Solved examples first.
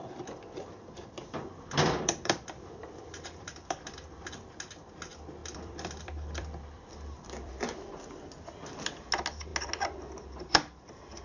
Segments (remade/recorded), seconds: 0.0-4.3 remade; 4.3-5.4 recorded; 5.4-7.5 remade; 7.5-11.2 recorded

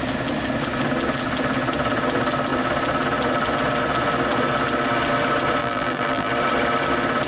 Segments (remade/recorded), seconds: 0.0-5.6 recorded; 5.6-6.3 remade; 6.3-7.3 recorded

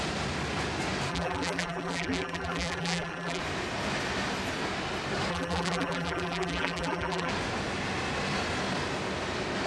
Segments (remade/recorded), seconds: 0.0-1.1 recorded; 1.1-3.4 remade; 3.4-5.3 recorded; 5.3-7.3 remade; 7.3-9.7 recorded

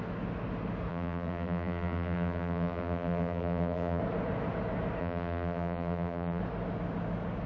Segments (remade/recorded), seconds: 0.0-0.9 recorded; 0.9-4.0 remade; 4.0-5.0 recorded; 5.0-6.4 remade; 6.4-7.5 recorded

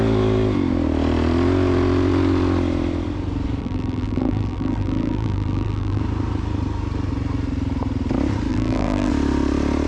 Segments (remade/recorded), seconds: 0.0-3.6 recorded; 3.6-6.0 remade; 6.0-8.5 recorded; 8.5-9.1 remade; 9.1-9.9 recorded